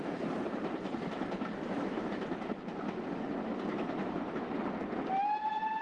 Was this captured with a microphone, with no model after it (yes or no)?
yes